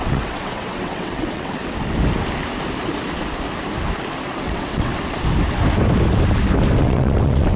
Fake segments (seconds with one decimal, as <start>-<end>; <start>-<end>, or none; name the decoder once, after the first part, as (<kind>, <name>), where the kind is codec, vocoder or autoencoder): 0.0-1.6 (vocoder, WaveNeXt); 4.4-4.9; 6.8-7.6